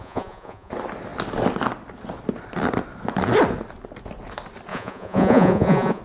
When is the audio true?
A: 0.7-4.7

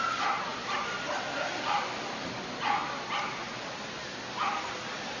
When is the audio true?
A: 0.0-5.2

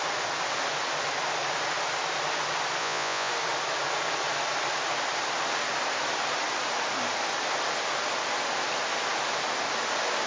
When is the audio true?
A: 0.0-2.8; 3.3-10.3

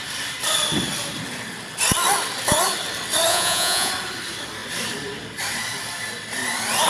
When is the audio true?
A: 0.0-3.3; 3.9-6.9

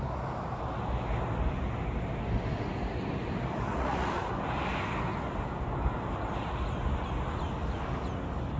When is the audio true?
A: 0.0-3.7; 4.3-8.6